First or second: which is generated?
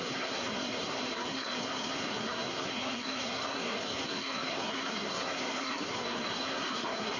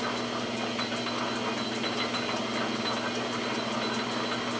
first